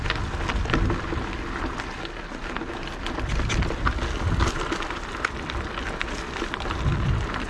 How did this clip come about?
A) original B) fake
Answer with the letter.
A